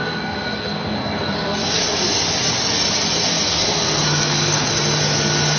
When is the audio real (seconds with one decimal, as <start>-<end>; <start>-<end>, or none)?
1.8-3.2; 4.7-5.6